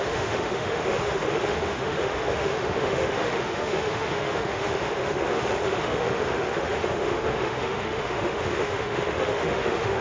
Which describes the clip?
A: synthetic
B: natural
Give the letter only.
A